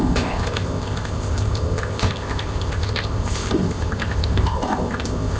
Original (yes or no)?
no